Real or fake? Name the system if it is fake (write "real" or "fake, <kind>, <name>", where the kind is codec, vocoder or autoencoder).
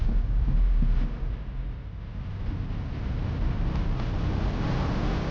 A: real